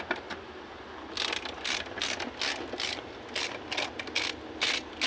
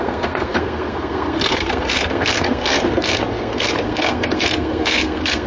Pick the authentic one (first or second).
first